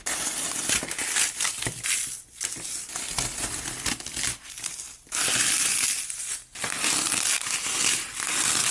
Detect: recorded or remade recorded